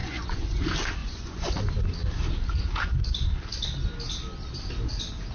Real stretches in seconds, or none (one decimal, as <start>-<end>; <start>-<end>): 0.6-1.0; 1.6-5.3